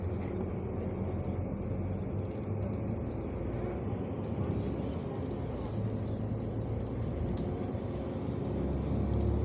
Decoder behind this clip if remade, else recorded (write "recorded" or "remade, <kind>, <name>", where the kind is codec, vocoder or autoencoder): recorded